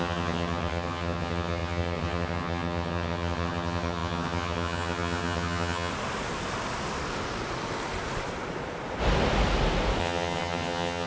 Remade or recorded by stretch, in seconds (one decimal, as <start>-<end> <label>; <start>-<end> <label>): 0.0-5.9 remade; 5.9-10.0 recorded; 10.0-11.1 remade